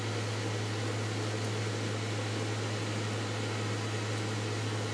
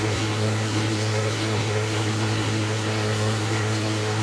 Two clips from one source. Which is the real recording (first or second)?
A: first